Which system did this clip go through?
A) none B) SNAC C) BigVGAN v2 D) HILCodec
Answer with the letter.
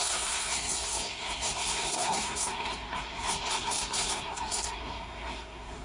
B